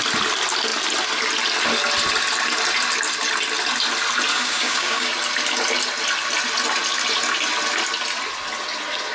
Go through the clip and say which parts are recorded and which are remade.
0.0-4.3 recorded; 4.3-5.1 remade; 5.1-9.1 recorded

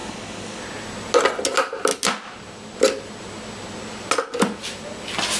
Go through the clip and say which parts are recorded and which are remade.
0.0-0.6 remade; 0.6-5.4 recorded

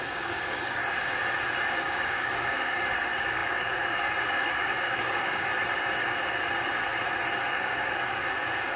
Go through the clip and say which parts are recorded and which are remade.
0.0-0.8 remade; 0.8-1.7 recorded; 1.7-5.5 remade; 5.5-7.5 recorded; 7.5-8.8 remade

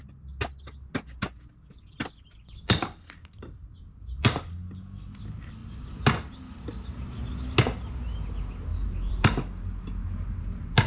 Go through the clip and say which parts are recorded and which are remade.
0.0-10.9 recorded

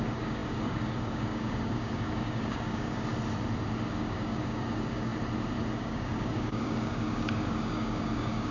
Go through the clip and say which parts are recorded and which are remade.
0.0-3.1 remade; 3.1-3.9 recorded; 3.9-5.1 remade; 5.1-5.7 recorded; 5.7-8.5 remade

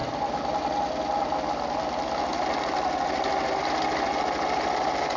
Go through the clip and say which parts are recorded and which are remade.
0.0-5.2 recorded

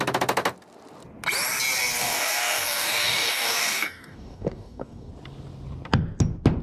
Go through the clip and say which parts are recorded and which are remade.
0.0-2.0 recorded; 2.0-5.1 remade; 5.1-6.6 recorded

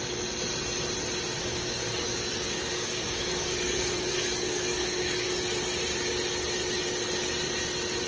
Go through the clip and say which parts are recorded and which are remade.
0.0-1.4 recorded; 1.4-5.3 remade; 5.3-8.1 recorded